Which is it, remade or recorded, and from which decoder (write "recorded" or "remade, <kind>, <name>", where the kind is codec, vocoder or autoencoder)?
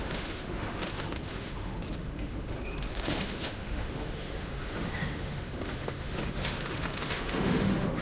remade, autoencoder, DAC-VAE